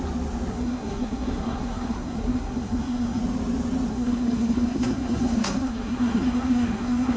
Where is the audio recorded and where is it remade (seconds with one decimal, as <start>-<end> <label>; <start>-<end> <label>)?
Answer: 0.0-0.5 recorded; 0.5-3.2 remade; 3.2-3.9 recorded; 3.9-7.2 remade